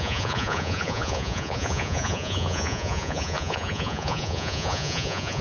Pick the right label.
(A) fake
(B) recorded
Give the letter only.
A